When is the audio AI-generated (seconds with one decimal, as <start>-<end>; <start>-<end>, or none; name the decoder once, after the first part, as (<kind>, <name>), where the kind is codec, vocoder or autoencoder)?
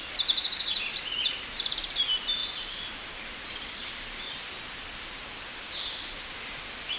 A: none